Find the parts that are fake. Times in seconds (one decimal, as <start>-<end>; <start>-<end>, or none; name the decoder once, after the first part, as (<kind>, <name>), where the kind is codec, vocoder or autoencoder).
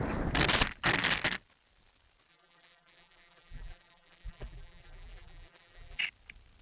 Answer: 2.3-6.0 (vocoder, BigVGAN v2)